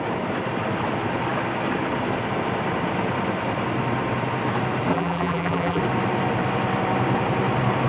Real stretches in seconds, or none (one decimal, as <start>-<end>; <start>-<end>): 0.0-4.9; 5.8-7.9